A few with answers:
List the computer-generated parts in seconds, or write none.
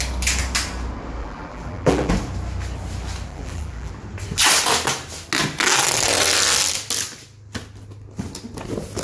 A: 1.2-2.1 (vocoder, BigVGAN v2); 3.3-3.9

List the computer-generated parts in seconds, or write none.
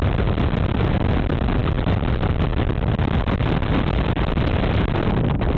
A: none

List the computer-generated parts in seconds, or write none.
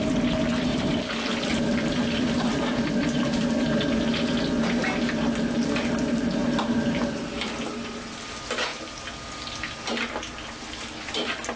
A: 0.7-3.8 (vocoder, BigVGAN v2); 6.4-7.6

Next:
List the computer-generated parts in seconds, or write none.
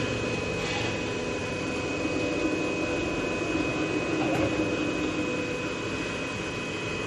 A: 1.4-2.0 (vocoder, BigVGAN v2)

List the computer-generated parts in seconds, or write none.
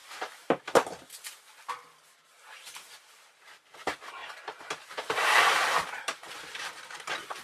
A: 0.0-0.6 (vocoder, BigVGAN v2); 4.2-6.7